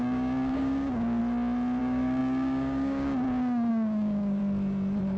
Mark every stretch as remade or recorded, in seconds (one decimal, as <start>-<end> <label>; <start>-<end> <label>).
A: 0.0-1.2 remade; 1.2-1.8 recorded; 1.8-4.4 remade; 4.4-5.2 recorded